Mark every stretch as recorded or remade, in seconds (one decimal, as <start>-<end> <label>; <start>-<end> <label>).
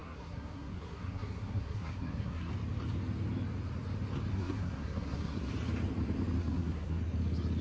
0.0-2.5 remade; 2.5-4.3 recorded; 4.3-5.5 remade; 5.5-6.4 recorded; 6.4-7.0 remade; 7.0-7.6 recorded